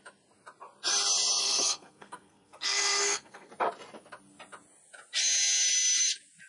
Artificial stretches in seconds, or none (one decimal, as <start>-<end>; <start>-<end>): 1.4-3.5